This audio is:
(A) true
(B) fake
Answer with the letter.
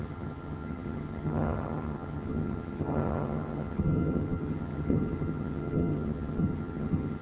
B